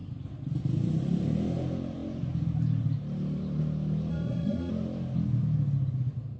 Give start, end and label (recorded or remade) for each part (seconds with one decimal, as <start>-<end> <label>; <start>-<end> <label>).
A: 0.0-4.1 recorded; 4.1-4.7 remade; 4.7-6.4 recorded